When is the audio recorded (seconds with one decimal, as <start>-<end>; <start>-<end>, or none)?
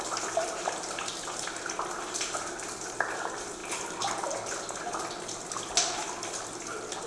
0.0-7.1